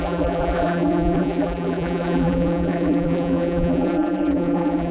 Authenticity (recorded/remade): remade